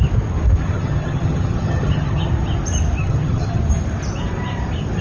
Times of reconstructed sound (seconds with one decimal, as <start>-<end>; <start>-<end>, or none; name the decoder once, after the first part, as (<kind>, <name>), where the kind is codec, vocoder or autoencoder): 0.6-2.3 (vocoder, HiFi-GAN); 3.0-3.6